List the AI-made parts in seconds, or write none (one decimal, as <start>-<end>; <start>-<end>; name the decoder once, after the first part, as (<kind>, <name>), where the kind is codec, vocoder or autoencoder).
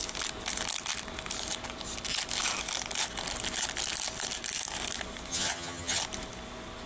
5.3-6.0 (vocoder, HiFi-GAN)